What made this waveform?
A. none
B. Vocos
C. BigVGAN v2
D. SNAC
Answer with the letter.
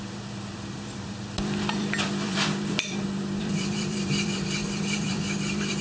C